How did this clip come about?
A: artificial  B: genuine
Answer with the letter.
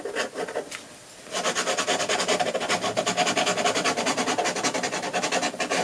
B